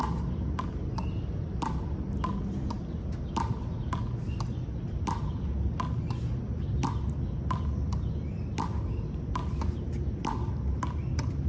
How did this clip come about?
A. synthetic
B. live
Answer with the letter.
B